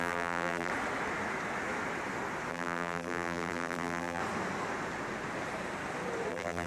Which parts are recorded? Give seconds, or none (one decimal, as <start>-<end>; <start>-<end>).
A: 0.7-2.5; 4.2-6.3